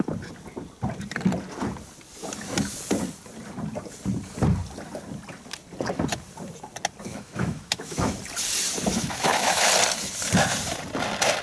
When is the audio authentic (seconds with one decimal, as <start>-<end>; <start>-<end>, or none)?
0.0-7.1; 8.2-8.9; 9.7-11.4